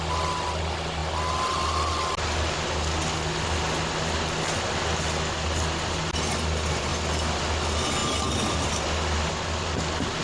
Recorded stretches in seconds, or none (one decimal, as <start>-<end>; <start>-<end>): 0.0-10.2